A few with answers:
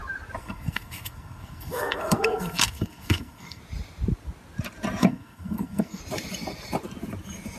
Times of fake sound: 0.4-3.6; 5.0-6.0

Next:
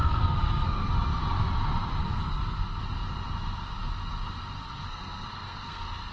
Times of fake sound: 0.0-0.9; 2.0-2.8; 4.7-6.1

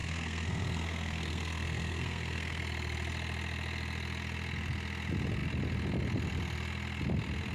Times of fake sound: 0.0-2.6

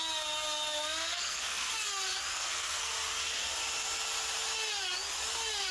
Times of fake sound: 0.8-1.7; 2.3-2.9